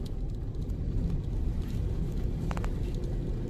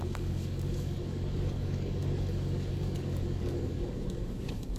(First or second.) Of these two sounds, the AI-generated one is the second